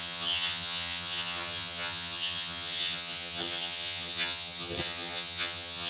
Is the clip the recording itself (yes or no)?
no